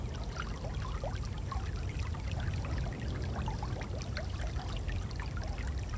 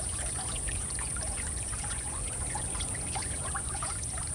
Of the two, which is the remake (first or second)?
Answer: second